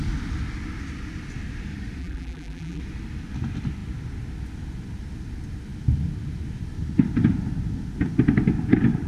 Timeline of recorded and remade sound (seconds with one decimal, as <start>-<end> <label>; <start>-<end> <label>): 0.0-2.0 recorded; 2.0-2.8 remade; 2.8-9.1 recorded